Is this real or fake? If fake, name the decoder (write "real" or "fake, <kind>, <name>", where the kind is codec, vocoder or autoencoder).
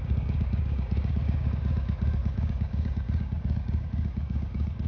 fake, codec, DAC